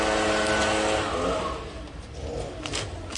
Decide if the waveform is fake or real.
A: real